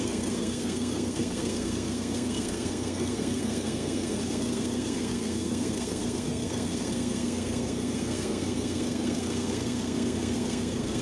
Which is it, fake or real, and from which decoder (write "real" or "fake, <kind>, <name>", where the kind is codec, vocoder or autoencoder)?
fake, codec, SNAC